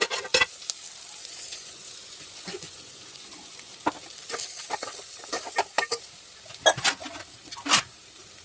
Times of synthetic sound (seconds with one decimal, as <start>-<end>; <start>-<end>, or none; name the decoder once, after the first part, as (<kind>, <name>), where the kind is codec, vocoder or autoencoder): 1.2-3.7 (vocoder, Vocos)